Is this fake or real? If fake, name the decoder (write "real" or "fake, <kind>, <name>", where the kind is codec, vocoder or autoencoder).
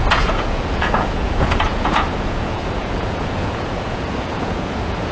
fake, vocoder, Vocos